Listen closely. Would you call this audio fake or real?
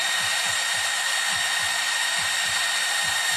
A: real